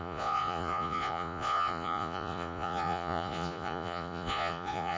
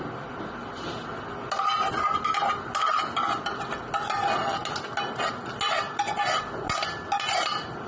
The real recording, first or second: second